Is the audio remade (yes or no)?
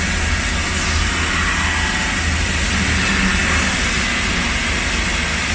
no